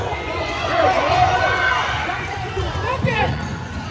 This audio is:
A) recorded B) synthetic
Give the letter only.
B